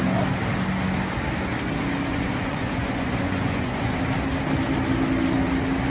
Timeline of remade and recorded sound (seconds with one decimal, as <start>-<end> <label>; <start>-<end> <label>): 0.0-2.1 recorded; 2.1-3.9 remade; 3.9-5.9 recorded